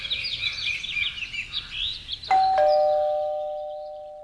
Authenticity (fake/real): real